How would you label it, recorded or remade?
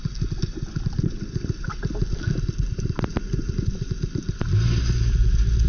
recorded